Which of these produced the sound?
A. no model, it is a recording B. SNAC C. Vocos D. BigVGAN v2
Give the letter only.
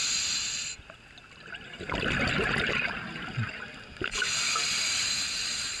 A